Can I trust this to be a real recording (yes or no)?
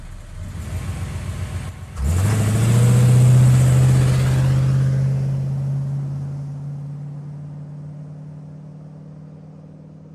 yes